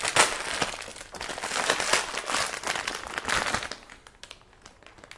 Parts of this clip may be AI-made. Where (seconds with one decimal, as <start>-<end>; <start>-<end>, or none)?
none